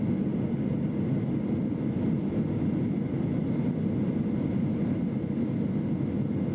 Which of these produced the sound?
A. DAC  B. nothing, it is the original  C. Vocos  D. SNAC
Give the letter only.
B